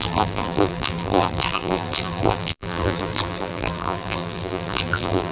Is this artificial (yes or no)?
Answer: yes